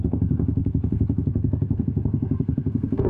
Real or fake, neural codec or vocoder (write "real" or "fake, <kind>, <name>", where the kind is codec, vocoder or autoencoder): fake, codec, SNAC